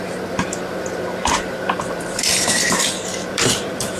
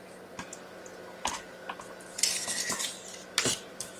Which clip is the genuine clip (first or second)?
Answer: second